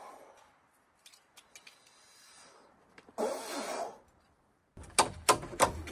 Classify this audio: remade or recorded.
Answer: recorded